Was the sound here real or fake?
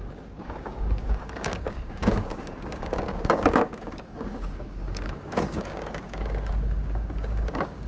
fake